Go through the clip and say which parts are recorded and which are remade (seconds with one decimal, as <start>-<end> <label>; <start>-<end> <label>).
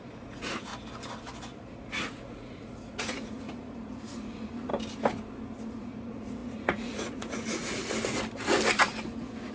0.0-0.7 remade; 0.7-1.6 recorded; 1.6-4.7 remade; 4.7-5.8 recorded; 5.8-7.8 remade; 7.8-9.1 recorded; 9.1-9.5 remade